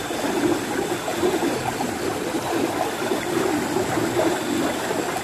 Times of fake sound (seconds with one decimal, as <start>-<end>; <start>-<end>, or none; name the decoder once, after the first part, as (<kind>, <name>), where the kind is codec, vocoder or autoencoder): 1.1-4.1 (vocoder, BigVGAN v2)